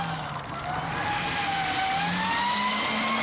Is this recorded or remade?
recorded